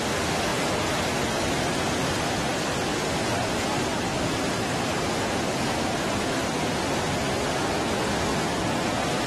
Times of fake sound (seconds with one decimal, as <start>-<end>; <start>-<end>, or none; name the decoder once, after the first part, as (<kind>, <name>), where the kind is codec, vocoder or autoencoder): 0.5-1.1 (vocoder, BigVGAN v2); 2.9-6.0